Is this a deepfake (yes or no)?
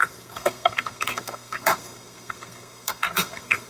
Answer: yes